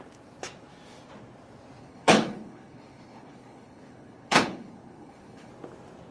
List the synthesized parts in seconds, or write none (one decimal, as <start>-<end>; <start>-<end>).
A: 1.8-5.5